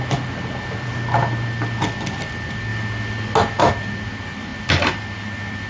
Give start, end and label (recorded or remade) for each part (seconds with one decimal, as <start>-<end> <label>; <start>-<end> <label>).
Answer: 0.0-5.7 recorded